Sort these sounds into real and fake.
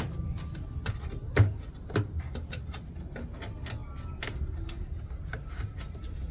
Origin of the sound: real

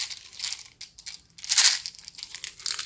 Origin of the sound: real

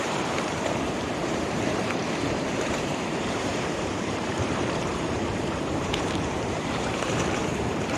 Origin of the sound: fake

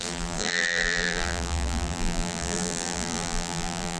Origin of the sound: fake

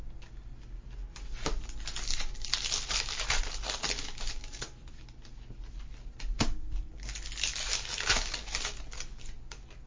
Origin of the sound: real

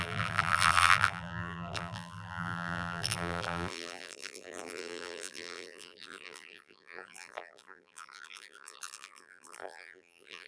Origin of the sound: fake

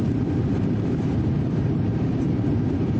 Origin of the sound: fake